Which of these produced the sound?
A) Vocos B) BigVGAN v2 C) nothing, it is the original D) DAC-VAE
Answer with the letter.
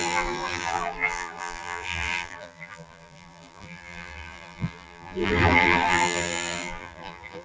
B